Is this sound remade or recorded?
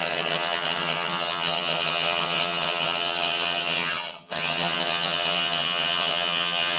remade